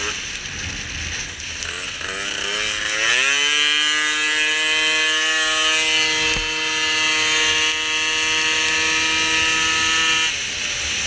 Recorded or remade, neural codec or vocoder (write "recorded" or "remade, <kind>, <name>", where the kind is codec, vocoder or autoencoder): recorded